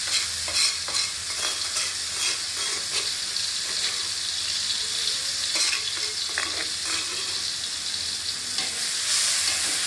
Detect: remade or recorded recorded